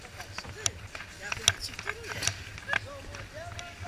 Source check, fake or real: real